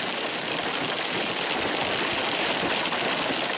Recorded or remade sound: recorded